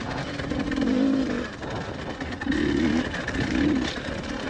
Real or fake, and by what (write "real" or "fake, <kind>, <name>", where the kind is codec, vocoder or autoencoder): real